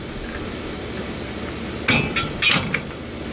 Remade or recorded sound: recorded